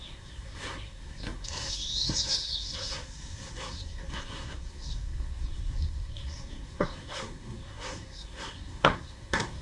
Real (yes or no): no